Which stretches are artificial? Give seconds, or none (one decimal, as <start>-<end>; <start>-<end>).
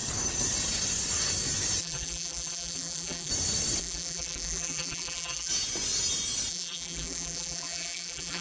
1.8-3.3; 3.8-5.5; 6.5-8.4